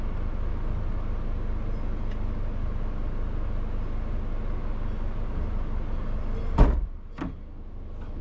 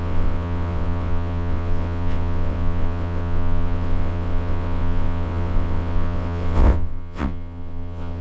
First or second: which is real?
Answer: first